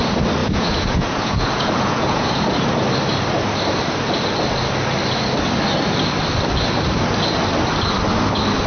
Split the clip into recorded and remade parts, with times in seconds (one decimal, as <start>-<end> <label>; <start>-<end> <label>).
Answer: 0.0-0.4 recorded; 0.4-2.3 remade; 2.3-8.7 recorded